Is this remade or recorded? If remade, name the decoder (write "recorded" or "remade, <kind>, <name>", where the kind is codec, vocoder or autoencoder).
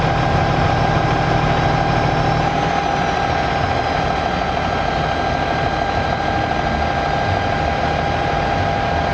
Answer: recorded